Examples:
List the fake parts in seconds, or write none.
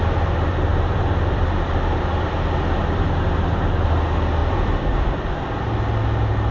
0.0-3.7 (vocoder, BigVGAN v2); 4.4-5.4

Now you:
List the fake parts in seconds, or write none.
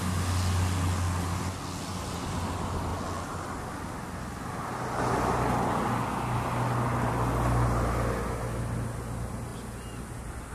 none